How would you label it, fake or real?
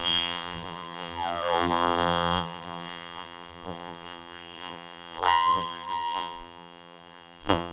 fake